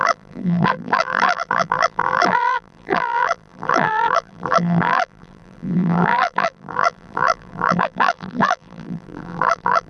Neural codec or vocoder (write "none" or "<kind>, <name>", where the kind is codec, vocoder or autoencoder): vocoder, BigVGAN v2